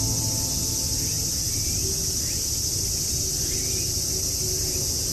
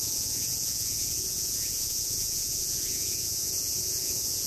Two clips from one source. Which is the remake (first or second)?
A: second